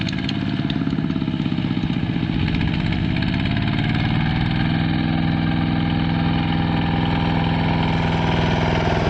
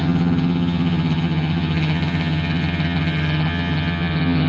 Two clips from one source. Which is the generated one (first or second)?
second